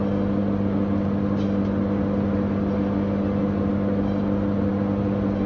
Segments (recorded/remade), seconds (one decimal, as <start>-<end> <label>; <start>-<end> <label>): 0.0-5.5 recorded